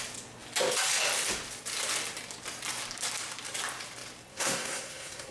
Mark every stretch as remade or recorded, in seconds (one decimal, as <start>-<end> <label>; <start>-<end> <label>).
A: 0.0-4.3 recorded; 4.3-5.3 remade